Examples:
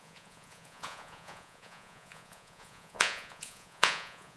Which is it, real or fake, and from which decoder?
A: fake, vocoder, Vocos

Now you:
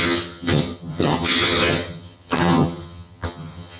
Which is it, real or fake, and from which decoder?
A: fake, vocoder, HiFi-GAN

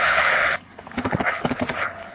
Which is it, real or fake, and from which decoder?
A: fake, codec, HILCodec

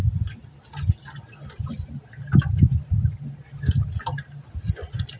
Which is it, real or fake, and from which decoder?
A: real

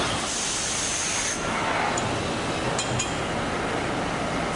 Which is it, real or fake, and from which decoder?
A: real